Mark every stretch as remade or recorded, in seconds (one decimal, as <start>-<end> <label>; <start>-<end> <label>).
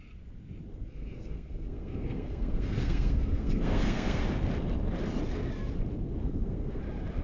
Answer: 0.0-0.7 recorded; 0.7-4.2 remade; 4.2-6.2 recorded; 6.2-6.8 remade; 6.8-7.2 recorded